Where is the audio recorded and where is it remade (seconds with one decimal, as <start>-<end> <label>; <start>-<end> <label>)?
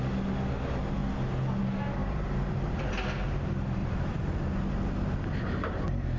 0.0-2.0 recorded; 2.0-3.4 remade; 3.4-3.8 recorded; 3.8-4.5 remade; 4.5-6.2 recorded